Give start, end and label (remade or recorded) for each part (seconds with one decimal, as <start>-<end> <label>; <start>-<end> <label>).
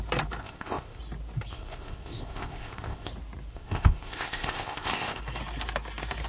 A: 0.0-0.4 recorded; 0.4-1.0 remade; 1.0-1.5 recorded; 1.5-3.1 remade; 3.1-3.5 recorded; 3.5-5.2 remade; 5.2-6.3 recorded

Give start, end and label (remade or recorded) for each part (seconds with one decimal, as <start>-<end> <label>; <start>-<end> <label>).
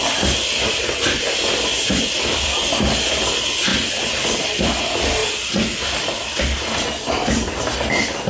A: 0.0-8.3 recorded